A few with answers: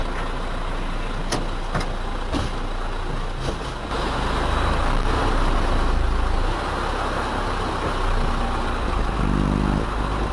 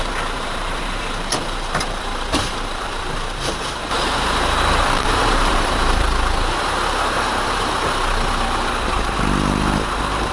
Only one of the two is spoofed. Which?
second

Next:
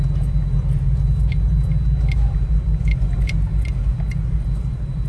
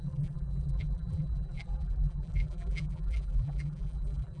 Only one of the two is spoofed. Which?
second